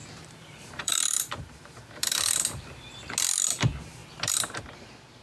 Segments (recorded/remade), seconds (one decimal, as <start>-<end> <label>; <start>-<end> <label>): 0.0-3.1 remade; 3.1-4.0 recorded; 4.0-4.6 remade; 4.6-5.2 recorded